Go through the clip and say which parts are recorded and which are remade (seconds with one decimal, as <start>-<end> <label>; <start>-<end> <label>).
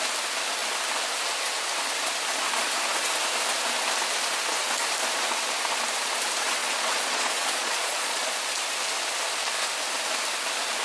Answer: 0.0-6.6 recorded; 6.6-8.4 remade; 8.4-10.8 recorded